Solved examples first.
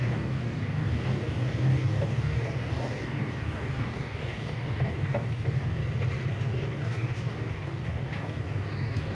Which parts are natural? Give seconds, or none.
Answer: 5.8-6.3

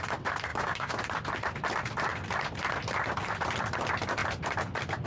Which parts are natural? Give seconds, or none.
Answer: 0.0-0.5; 1.0-5.1